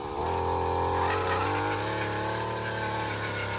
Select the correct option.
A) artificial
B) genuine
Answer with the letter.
B